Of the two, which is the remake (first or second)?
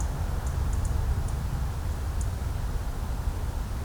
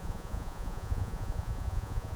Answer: second